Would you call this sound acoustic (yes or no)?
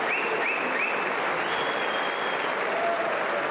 yes